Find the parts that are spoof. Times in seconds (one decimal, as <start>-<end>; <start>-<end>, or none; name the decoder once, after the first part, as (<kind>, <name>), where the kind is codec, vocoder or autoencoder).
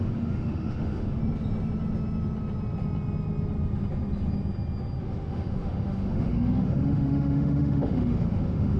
0.0-1.2 (autoencoder, DAC-VAE); 5.0-8.8